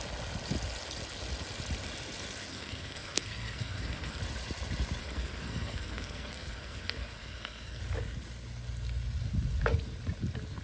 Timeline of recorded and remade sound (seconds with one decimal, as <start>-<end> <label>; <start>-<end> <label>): 0.0-2.5 recorded; 2.5-4.2 remade; 4.2-5.0 recorded; 5.0-7.8 remade; 7.8-10.6 recorded